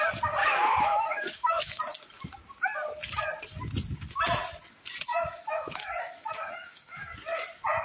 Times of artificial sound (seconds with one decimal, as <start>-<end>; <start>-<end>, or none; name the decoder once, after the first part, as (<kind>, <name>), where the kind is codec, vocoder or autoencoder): 0.4-1.8 (autoencoder, DAC-VAE); 5.1-7.1